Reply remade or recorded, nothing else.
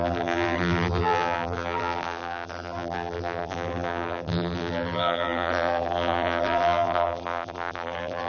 remade